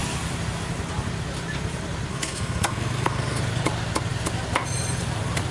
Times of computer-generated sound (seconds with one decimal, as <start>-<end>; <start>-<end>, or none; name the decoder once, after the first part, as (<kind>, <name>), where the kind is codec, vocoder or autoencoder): 2.1-3.4 (codec, SNAC)